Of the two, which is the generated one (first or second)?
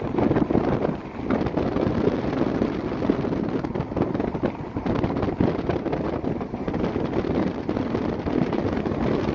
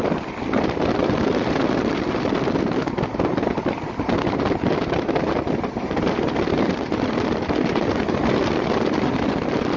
second